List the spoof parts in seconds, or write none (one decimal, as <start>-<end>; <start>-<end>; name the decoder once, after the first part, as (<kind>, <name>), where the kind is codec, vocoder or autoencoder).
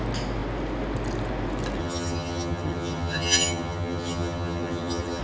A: 1.8-5.2 (vocoder, HiFi-GAN)